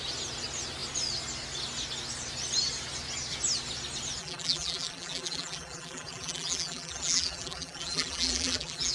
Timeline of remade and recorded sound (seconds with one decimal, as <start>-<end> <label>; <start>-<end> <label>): 0.0-4.2 recorded; 4.2-8.9 remade